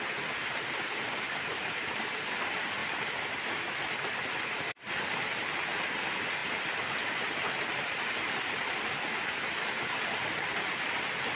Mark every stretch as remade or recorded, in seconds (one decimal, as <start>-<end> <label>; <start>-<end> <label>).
0.0-11.4 recorded